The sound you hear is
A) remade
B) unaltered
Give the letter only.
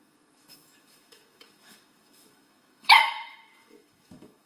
A